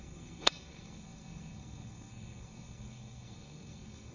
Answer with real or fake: fake